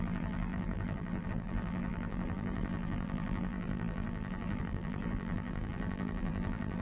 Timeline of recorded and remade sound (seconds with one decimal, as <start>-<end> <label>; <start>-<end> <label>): 0.0-6.8 remade